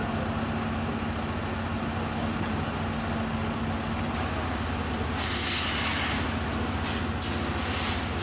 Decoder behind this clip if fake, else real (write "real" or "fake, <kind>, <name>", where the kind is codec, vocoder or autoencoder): real